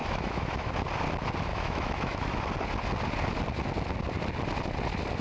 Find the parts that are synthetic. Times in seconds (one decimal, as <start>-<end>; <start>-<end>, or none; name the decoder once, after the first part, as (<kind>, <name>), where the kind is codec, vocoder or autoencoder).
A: 0.0-0.7 (autoencoder, DAC-VAE); 1.5-2.5